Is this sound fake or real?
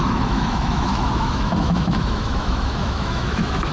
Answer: fake